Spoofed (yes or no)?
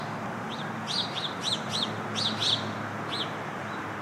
no